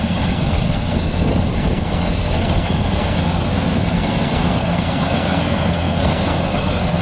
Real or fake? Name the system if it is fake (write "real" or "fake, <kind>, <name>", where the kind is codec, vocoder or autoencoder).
fake, codec, SNAC